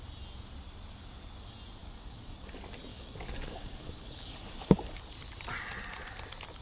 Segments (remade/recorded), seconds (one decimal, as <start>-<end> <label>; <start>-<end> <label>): 0.0-1.8 recorded; 1.8-2.5 remade; 2.5-2.9 recorded; 2.9-5.0 remade; 5.0-6.6 recorded